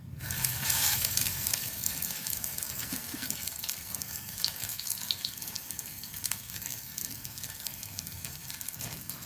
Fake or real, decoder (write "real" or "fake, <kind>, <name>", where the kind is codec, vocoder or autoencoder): fake, codec, SNAC